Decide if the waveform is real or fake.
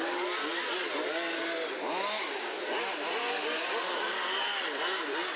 real